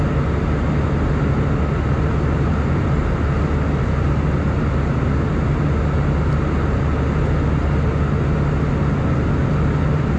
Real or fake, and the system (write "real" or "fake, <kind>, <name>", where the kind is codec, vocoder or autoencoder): real